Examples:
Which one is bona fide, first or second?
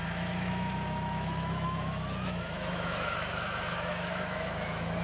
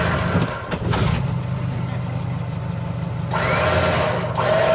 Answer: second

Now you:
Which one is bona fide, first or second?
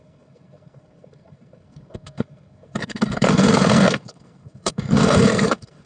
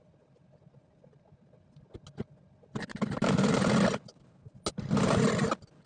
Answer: second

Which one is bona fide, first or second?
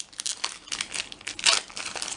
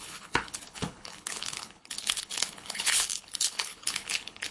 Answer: first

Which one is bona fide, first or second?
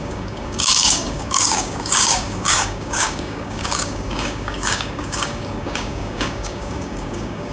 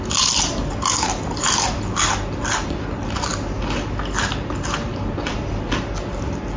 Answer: second